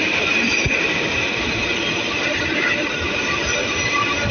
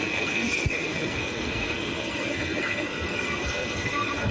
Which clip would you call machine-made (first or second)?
second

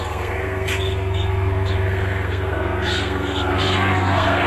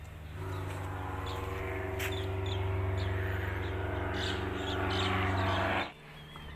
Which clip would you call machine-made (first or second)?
first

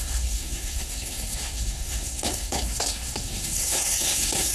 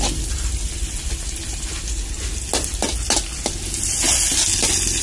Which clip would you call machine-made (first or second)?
first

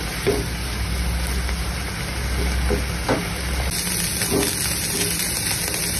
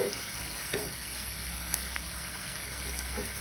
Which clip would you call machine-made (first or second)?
second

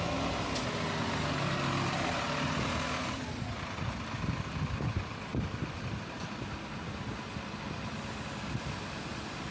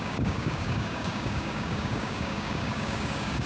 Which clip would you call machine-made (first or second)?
second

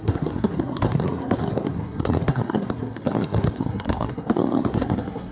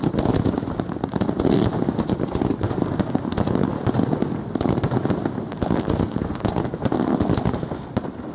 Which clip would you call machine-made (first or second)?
first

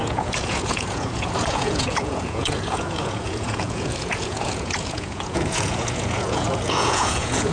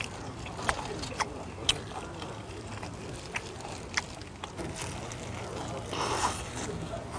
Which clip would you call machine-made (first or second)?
first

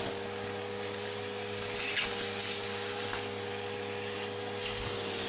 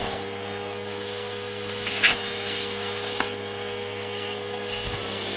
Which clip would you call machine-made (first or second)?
second